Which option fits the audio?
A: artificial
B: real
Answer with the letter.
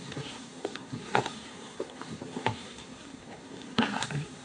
A